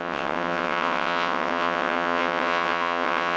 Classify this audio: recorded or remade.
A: remade